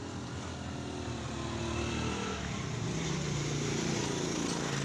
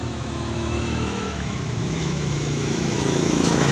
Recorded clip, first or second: first